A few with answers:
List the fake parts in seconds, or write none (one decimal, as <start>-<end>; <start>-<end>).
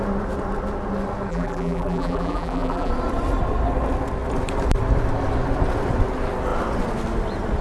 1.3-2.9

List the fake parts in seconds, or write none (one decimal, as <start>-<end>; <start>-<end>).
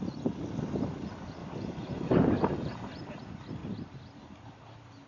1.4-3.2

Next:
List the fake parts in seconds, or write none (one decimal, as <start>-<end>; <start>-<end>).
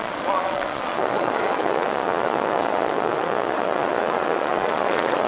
0.0-5.3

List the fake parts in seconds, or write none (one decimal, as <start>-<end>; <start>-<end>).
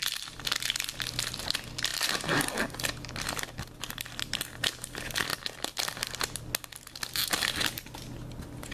none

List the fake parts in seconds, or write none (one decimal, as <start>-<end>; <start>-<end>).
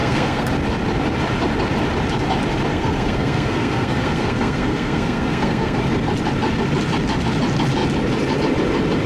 0.0-0.5; 2.7-5.8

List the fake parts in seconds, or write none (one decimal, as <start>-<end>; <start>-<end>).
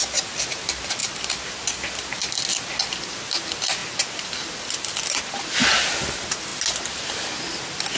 none